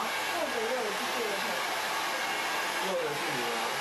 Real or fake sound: real